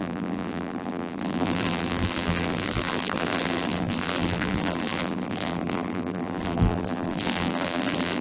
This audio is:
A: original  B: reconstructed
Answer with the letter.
B